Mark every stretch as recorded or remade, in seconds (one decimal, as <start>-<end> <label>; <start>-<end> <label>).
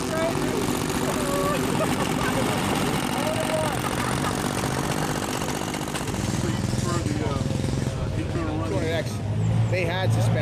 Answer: 0.0-1.4 recorded; 1.4-2.0 remade; 2.0-10.4 recorded